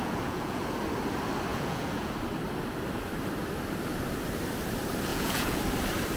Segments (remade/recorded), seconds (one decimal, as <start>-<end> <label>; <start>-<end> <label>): 0.0-0.6 remade; 0.6-1.5 recorded; 1.5-2.1 remade; 2.1-5.1 recorded; 5.1-5.6 remade; 5.6-6.2 recorded

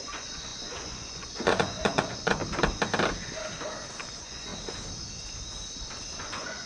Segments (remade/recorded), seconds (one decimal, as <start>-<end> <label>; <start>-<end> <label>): 0.0-2.4 remade; 2.4-4.1 recorded; 4.1-4.5 remade; 4.5-6.2 recorded; 6.2-6.7 remade

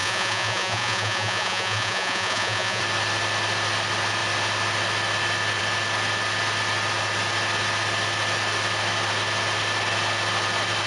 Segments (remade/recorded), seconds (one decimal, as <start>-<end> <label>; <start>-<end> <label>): 0.0-2.8 remade; 2.8-10.9 recorded

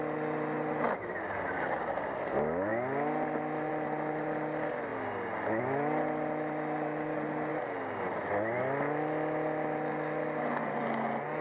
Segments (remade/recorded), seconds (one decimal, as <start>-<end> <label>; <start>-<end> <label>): 0.0-11.4 recorded

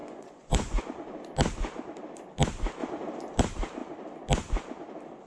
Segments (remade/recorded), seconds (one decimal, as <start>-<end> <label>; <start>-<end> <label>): 0.0-0.8 remade; 0.8-5.3 recorded

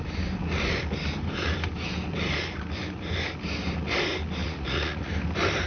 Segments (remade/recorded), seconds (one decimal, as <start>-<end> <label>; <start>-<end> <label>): 0.0-4.4 recorded; 4.4-5.1 remade; 5.1-5.7 recorded